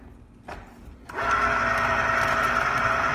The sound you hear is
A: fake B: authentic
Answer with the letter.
B